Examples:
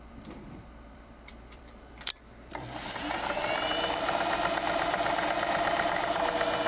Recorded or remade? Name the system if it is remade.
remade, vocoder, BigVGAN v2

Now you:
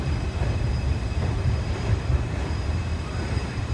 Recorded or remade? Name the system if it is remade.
remade, vocoder, BigVGAN v2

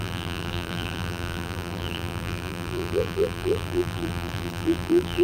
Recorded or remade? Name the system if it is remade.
remade, vocoder, BigVGAN v2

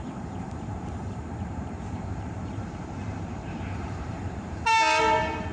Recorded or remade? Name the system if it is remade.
remade, vocoder, BigVGAN v2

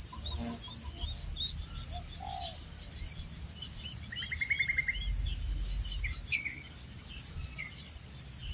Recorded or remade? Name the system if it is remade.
recorded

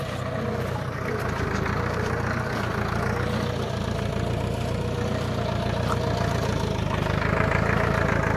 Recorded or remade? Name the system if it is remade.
recorded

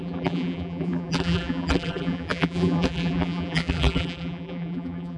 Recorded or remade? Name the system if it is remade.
remade, vocoder, BigVGAN v2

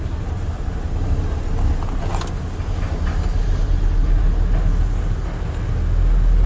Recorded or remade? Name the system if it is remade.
recorded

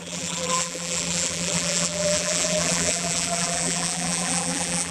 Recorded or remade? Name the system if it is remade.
remade, vocoder, BigVGAN v2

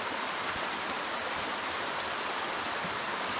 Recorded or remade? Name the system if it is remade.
recorded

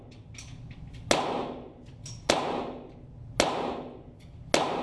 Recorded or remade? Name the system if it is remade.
recorded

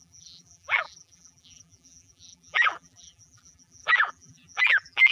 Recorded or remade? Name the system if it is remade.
remade, vocoder, BigVGAN v2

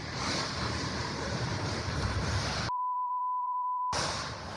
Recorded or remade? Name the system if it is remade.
remade, vocoder, BigVGAN v2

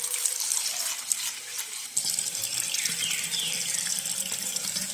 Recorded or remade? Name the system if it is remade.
recorded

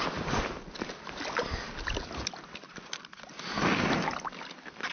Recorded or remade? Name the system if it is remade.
recorded